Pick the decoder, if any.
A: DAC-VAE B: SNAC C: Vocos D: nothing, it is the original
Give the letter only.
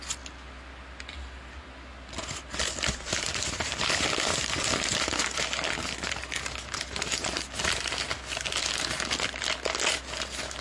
D